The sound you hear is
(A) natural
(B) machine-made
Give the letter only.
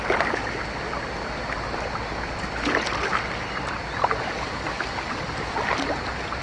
A